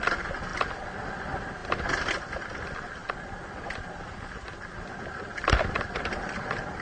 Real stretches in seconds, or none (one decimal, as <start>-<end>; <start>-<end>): 0.0-6.8